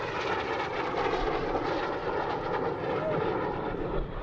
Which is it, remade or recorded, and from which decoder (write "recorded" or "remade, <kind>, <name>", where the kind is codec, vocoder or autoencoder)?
recorded